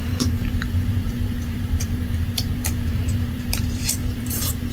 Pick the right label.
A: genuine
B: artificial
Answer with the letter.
B